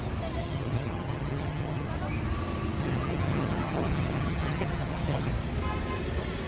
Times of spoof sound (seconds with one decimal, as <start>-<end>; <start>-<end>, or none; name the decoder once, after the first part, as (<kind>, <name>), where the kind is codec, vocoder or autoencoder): 0.4-1.9 (vocoder, HiFi-GAN); 2.8-5.3